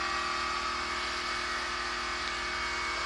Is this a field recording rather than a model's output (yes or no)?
yes